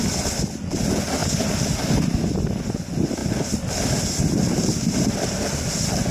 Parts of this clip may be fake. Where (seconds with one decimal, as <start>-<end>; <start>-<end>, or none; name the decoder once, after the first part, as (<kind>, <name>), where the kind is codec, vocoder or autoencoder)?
none